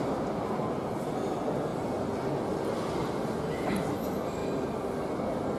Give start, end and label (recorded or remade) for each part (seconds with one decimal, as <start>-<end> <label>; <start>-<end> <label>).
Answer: 0.0-5.6 recorded